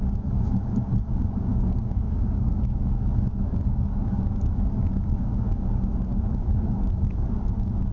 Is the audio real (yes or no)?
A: no